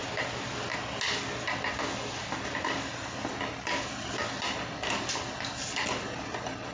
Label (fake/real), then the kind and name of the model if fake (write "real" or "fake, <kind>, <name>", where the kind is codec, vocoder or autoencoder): real